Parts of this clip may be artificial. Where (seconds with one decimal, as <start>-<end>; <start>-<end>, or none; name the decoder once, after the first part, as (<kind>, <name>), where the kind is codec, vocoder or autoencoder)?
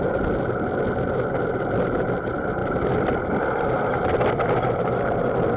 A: none